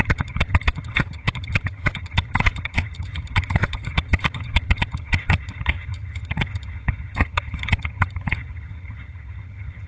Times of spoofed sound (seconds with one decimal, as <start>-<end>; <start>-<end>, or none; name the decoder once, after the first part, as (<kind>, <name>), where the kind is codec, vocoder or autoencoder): 0.0-9.9 (vocoder, HiFi-GAN)

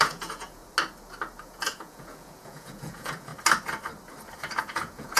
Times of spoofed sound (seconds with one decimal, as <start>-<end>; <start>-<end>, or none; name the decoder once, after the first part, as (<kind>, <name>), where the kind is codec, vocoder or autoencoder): 0.0-0.6 (vocoder, Vocos); 1.4-3.3; 4.6-5.2

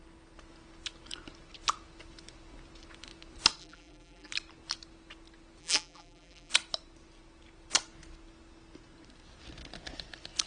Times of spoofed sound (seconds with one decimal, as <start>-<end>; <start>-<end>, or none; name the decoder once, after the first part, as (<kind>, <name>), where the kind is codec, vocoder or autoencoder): 3.6-4.3 (vocoder, BigVGAN v2); 5.6-6.5

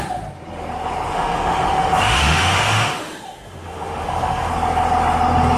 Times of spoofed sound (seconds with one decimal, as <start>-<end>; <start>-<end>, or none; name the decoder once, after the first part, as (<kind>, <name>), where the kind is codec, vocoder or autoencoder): 1.1-4.5 (autoencoder, DAC-VAE)